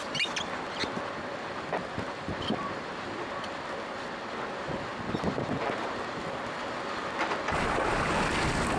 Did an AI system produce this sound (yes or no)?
no